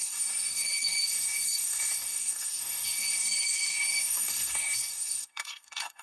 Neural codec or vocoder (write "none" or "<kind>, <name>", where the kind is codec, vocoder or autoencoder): codec, SNAC